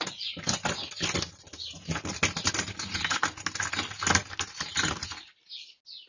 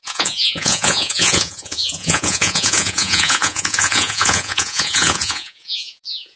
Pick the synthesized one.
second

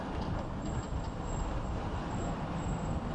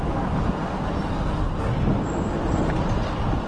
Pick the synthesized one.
first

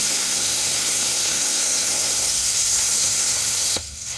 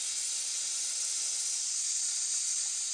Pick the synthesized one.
first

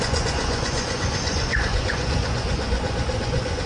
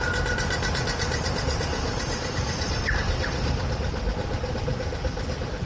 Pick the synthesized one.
first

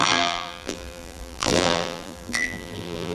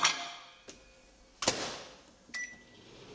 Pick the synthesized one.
first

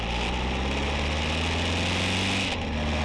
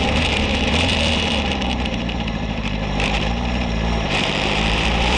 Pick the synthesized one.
second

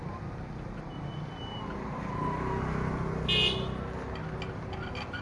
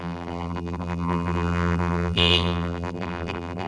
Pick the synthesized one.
second